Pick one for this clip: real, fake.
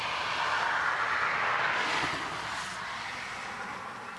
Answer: real